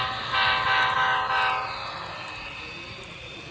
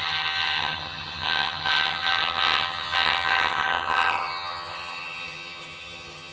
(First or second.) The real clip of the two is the first